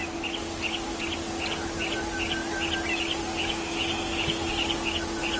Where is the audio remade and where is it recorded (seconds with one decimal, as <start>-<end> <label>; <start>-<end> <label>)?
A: 0.0-5.4 recorded